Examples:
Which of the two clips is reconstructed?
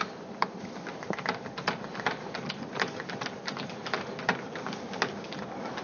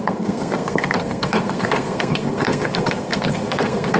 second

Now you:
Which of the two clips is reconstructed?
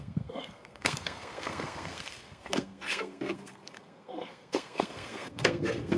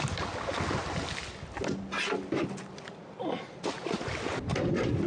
first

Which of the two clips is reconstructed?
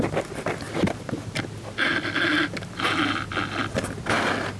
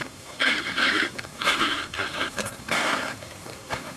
second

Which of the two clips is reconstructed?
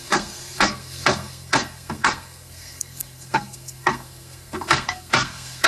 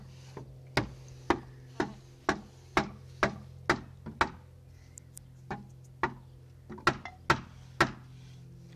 first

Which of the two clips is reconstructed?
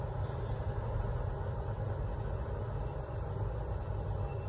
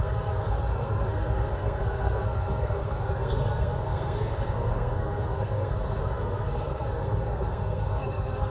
second